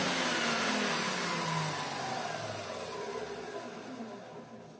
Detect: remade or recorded recorded